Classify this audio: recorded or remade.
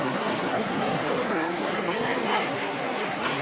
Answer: remade